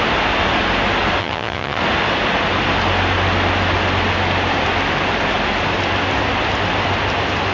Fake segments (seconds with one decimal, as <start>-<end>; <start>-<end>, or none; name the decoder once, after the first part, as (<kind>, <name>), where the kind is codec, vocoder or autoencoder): 1.2-1.8 (vocoder, HiFi-GAN)